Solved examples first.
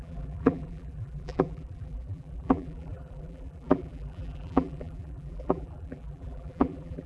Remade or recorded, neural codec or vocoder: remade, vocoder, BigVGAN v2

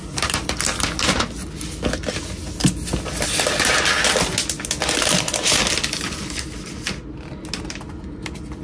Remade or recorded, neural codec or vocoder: recorded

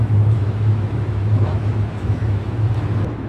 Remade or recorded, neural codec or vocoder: remade, autoencoder, DAC-VAE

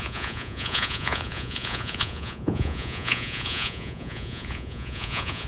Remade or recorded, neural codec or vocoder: remade, vocoder, Vocos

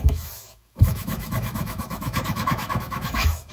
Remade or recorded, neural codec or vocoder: remade, autoencoder, DAC-VAE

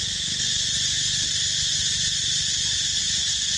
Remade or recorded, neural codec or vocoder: recorded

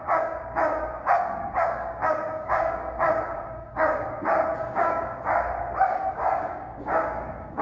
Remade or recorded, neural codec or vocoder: remade, codec, DAC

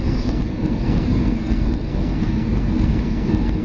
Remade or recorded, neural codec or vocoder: remade, codec, SNAC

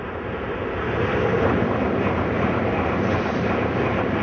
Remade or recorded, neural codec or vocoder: remade, vocoder, BigVGAN v2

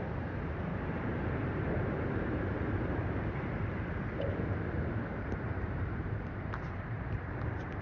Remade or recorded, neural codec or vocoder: remade, vocoder, BigVGAN v2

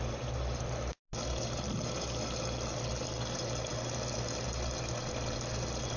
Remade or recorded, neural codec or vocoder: recorded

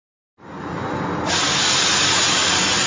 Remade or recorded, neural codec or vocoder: recorded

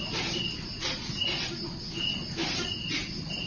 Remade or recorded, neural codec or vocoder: recorded